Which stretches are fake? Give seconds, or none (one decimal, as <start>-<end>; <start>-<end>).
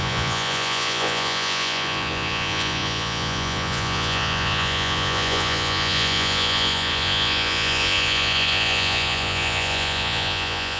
0.0-10.8